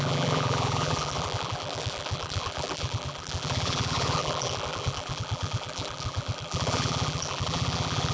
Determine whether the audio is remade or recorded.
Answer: remade